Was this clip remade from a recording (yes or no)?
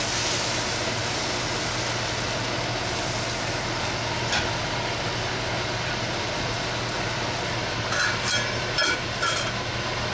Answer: no